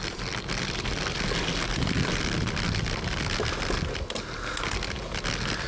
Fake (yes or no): no